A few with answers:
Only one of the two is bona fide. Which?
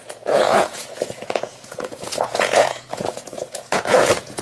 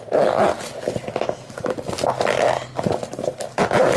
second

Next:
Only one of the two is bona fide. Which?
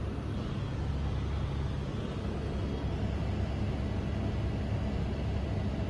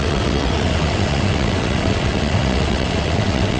first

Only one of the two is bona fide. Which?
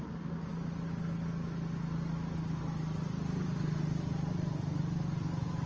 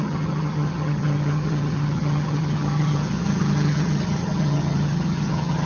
first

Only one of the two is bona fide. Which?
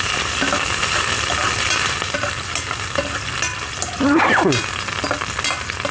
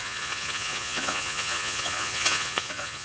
first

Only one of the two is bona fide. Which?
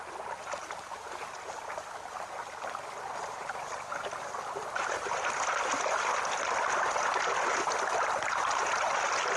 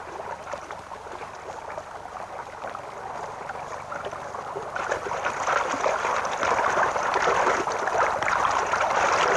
first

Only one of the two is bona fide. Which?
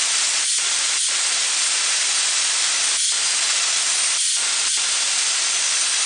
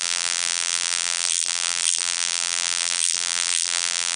first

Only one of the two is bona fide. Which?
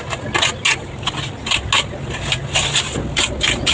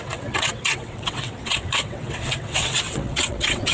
first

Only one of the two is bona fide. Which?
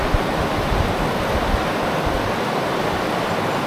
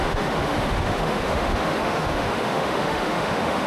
first